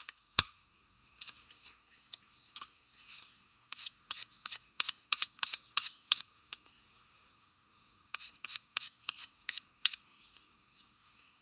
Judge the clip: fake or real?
fake